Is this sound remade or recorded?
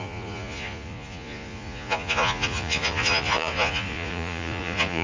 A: remade